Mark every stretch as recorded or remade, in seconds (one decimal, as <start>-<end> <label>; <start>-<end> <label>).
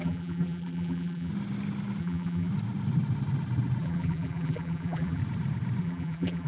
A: 0.0-1.3 remade; 1.3-2.0 recorded; 2.0-2.5 remade; 2.5-3.8 recorded; 3.8-5.2 remade; 5.2-5.8 recorded; 5.8-6.5 remade